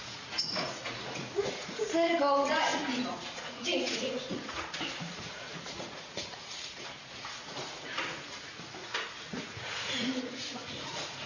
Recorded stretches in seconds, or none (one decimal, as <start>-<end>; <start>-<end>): none